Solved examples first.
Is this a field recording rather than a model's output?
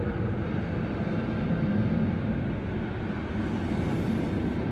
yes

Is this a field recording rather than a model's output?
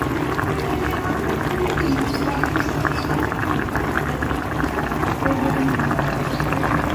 yes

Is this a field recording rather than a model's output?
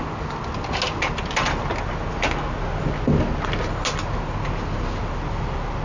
yes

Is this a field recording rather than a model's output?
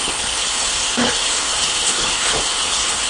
no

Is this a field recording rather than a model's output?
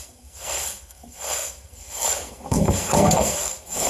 no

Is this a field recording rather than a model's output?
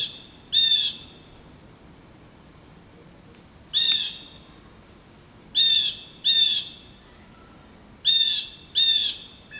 yes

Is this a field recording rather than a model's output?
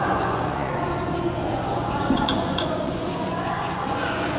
no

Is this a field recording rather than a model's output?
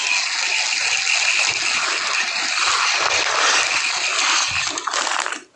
yes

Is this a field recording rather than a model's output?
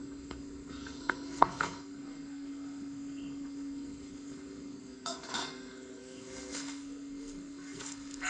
no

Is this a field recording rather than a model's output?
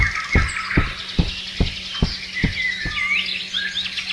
yes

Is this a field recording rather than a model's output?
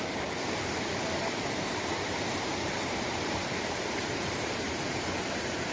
no